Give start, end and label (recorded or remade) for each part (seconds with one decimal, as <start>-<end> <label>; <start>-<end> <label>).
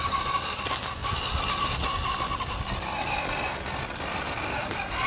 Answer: 0.0-1.0 remade; 1.0-4.1 recorded; 4.1-5.1 remade